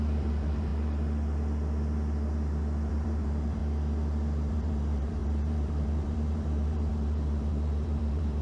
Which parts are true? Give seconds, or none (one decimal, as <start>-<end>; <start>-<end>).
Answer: 0.7-2.9; 3.6-4.5